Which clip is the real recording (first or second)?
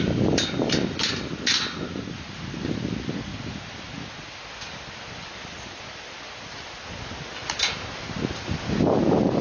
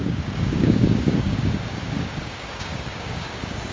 first